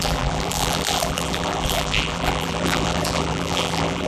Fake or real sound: fake